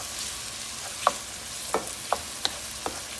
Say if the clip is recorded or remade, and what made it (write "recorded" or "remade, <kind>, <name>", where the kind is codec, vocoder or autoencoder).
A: recorded